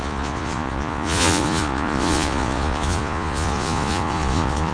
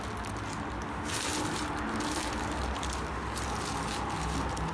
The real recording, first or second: second